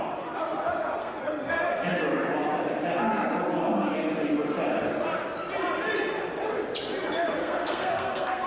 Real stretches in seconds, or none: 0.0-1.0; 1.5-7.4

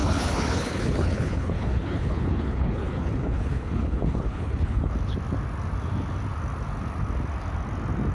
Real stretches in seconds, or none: 4.9-8.1

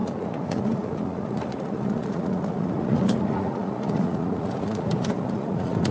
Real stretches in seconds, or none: none

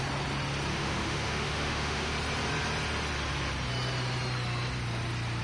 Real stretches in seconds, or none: 0.0-0.7; 2.1-5.4